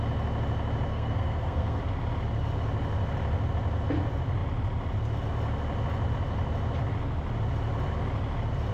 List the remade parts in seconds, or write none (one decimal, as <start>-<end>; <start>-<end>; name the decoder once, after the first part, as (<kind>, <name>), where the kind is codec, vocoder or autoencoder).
0.9-1.8 (codec, SNAC)